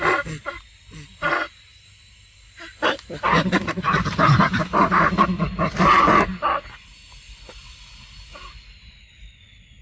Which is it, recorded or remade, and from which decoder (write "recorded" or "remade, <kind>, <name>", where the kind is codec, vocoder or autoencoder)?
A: recorded